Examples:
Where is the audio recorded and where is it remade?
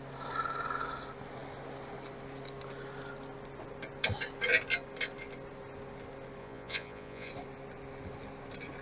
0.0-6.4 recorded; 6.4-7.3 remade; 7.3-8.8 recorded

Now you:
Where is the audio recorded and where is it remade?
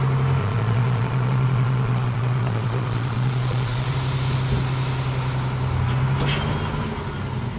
0.0-0.4 recorded; 0.4-3.9 remade; 3.9-7.6 recorded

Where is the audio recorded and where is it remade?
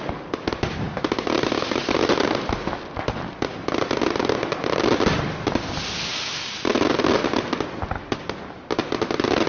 0.0-9.5 recorded